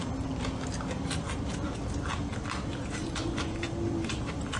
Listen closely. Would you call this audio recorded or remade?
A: recorded